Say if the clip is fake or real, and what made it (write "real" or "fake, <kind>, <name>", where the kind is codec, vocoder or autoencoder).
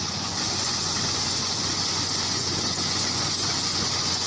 fake, vocoder, Vocos